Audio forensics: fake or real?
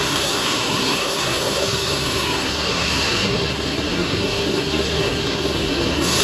fake